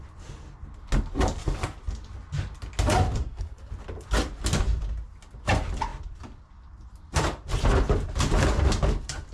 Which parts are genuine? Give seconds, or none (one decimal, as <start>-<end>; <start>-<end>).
0.0-3.2; 3.7-9.3